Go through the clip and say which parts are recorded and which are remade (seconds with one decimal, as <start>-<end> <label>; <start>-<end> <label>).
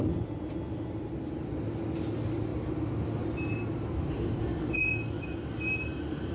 0.0-6.3 recorded